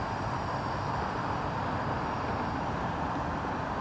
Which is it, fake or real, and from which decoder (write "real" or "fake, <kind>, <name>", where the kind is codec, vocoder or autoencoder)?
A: real